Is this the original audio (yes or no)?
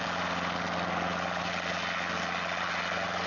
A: yes